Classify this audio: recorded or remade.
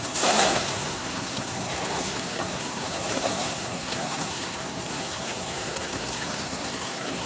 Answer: remade